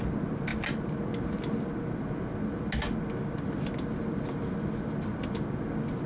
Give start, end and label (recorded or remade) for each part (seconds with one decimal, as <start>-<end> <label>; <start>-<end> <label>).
0.0-6.1 recorded